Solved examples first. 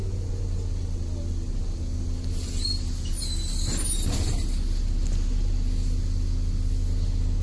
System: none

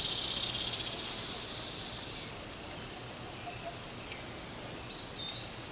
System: none